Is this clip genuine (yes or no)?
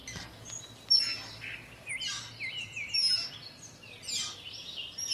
yes